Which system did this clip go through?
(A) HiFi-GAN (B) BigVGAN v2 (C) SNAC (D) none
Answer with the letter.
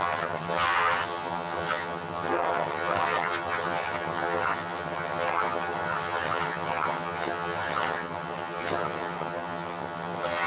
A